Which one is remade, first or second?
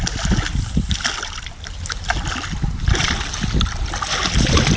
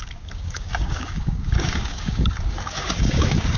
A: second